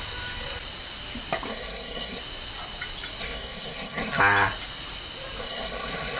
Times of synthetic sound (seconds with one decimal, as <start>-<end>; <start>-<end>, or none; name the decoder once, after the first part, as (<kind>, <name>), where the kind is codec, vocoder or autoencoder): 1.5-2.2 (codec, SNAC); 3.2-4.2; 5.4-6.2